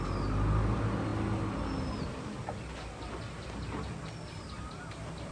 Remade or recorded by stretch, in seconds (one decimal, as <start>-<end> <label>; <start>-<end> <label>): 0.0-5.3 recorded